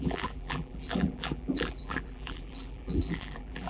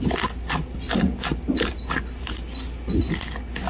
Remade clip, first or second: first